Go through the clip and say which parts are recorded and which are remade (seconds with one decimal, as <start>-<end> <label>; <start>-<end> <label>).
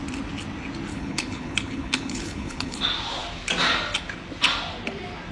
0.0-0.9 recorded; 0.9-2.8 remade; 2.8-5.3 recorded